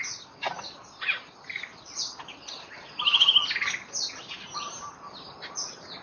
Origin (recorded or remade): recorded